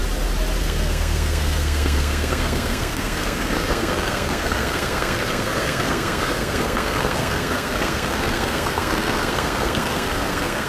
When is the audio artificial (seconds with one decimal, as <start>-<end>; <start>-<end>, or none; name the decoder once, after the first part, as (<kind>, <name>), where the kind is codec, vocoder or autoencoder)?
0.6-10.7 (codec, SNAC)